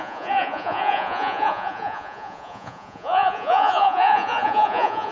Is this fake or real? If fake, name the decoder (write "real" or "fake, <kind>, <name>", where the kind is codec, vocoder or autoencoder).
fake, vocoder, Vocos